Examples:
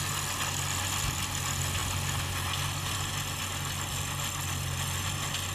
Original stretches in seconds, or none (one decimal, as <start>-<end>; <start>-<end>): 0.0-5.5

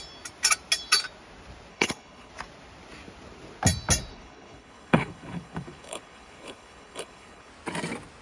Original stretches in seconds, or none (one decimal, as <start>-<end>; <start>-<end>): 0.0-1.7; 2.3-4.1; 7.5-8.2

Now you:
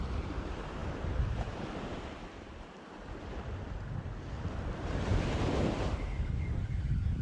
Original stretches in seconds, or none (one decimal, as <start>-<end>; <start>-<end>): 0.0-7.2